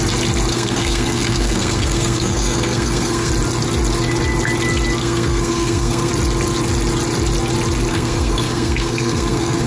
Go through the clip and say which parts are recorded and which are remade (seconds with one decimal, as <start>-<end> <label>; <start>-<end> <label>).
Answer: 0.0-0.5 recorded; 0.5-3.3 remade; 3.3-5.0 recorded; 5.0-6.1 remade; 6.1-7.9 recorded; 7.9-9.7 remade